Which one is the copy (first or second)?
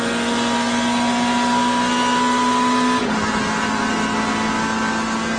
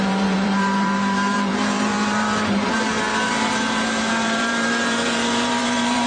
second